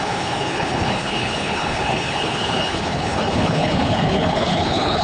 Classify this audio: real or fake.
fake